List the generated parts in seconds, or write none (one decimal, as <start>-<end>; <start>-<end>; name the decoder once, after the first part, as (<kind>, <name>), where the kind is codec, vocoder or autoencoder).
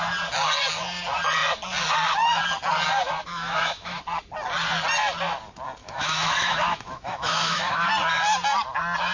3.2-4.0 (autoencoder, DAC-VAE); 5.8-7.9